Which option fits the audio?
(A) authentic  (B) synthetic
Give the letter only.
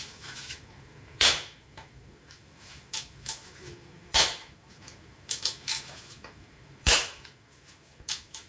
B